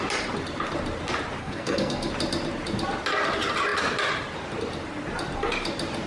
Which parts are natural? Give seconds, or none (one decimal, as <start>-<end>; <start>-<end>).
0.0-1.4; 2.1-6.1